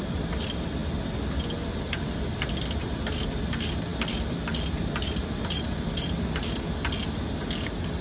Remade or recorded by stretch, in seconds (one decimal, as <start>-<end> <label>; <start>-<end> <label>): 0.0-8.0 recorded